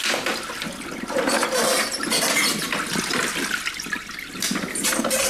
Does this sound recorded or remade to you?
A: recorded